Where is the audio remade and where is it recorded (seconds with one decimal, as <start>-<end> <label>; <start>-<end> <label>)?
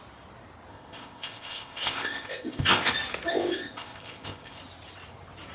0.0-0.7 recorded; 0.7-2.9 remade; 2.9-3.3 recorded; 3.3-4.6 remade; 4.6-5.5 recorded